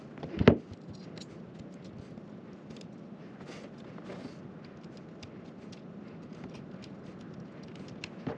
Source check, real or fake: real